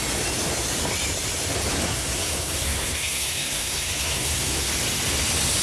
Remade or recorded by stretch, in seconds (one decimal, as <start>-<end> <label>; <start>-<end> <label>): 0.0-1.8 recorded; 1.8-4.7 remade; 4.7-5.6 recorded